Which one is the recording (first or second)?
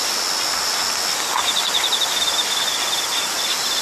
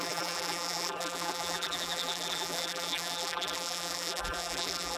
first